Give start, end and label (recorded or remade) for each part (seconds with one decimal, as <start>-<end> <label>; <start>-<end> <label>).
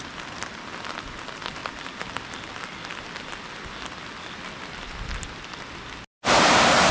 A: 0.0-6.9 recorded